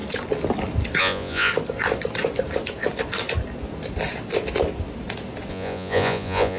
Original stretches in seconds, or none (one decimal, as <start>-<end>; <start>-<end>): 0.0-1.0; 1.5-5.5